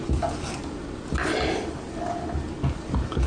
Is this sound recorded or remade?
recorded